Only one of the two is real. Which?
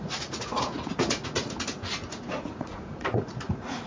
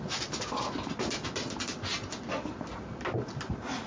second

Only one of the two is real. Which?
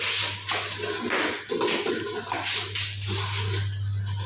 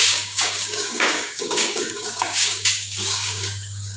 first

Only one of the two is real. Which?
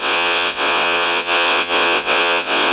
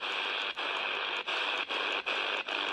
second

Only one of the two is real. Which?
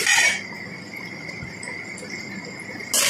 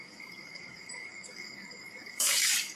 first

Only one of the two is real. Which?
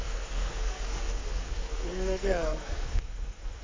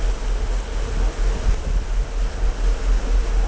second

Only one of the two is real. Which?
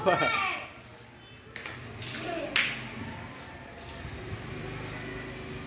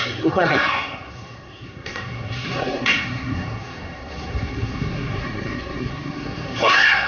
first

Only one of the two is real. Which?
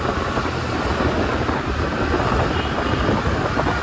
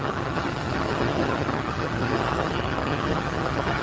first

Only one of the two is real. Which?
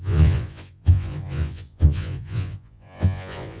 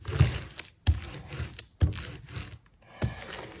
second